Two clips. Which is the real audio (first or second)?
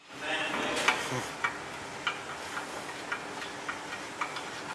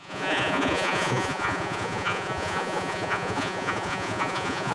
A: first